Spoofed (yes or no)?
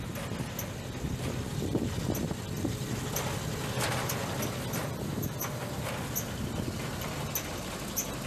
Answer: no